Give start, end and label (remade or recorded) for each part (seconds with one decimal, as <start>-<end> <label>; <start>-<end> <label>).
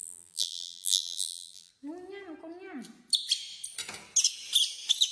0.0-1.7 remade; 1.7-5.1 recorded